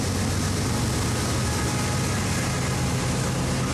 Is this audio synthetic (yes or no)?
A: no